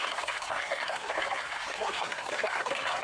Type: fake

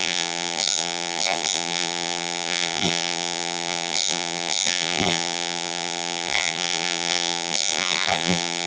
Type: fake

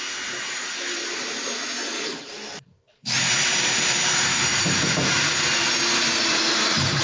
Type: fake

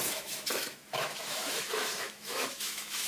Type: fake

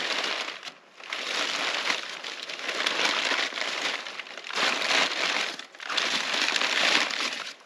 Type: real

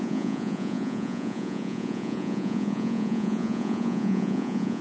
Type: fake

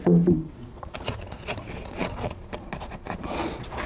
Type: fake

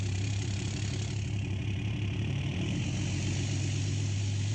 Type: fake